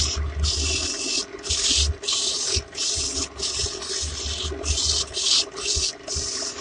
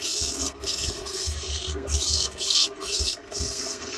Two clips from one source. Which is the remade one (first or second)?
second